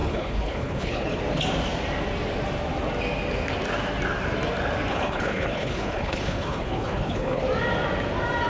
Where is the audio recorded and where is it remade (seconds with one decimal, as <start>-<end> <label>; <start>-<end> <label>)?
0.0-1.2 remade; 1.2-4.9 recorded; 4.9-7.4 remade; 7.4-8.5 recorded